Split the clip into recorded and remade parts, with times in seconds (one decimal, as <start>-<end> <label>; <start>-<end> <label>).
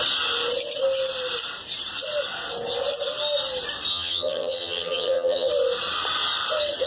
0.0-3.9 recorded; 3.9-5.5 remade; 5.5-6.9 recorded